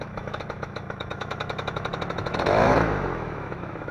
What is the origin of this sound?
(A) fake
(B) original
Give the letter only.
A